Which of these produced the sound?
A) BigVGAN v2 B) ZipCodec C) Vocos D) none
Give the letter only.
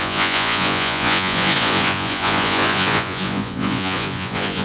C